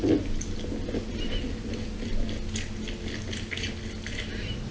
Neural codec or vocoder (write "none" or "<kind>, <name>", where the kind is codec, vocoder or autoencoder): none